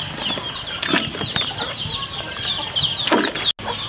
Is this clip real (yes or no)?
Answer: yes